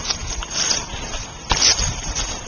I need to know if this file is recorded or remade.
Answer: recorded